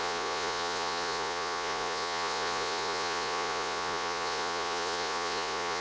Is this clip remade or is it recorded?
remade